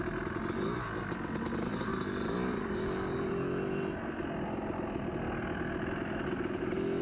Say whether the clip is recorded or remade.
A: recorded